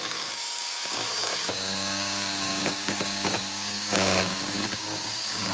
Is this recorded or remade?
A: remade